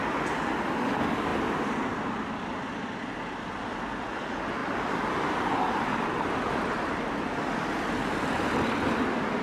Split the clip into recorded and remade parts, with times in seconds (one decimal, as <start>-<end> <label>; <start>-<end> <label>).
0.0-4.6 recorded; 4.6-6.4 remade; 6.4-9.4 recorded